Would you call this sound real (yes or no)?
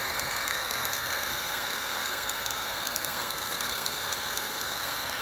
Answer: no